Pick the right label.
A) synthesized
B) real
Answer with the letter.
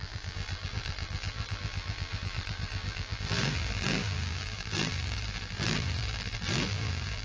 A